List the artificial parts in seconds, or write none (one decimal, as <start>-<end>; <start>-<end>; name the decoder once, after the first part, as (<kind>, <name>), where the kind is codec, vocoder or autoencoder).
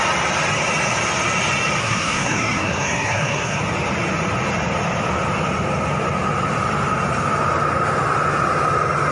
1.8-3.6 (codec, SNAC)